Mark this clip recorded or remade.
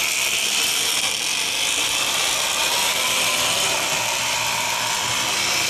recorded